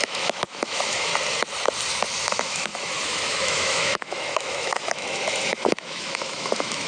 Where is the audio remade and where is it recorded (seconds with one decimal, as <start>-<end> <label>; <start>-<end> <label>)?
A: 0.0-1.1 remade; 1.1-2.2 recorded; 2.2-6.9 remade